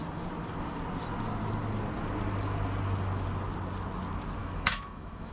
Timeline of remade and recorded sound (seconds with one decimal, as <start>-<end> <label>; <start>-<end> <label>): 0.0-4.4 recorded; 4.4-5.3 remade

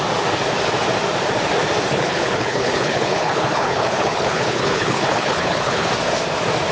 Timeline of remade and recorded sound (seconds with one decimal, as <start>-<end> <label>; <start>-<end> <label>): 0.0-1.9 recorded; 1.9-5.9 remade; 5.9-6.7 recorded

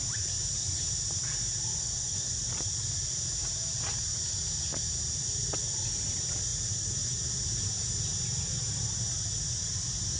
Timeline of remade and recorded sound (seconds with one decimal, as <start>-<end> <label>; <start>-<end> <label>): 0.0-1.7 recorded; 1.7-2.5 remade; 2.5-10.2 recorded

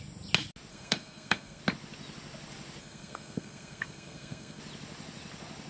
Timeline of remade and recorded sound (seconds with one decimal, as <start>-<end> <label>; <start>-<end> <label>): 0.0-0.7 recorded; 0.7-1.6 remade; 1.6-2.8 recorded; 2.8-4.6 remade; 4.6-5.7 recorded

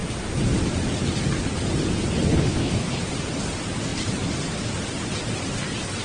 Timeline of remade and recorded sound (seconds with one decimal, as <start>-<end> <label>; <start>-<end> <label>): 0.0-2.3 recorded; 2.3-3.0 remade; 3.0-6.0 recorded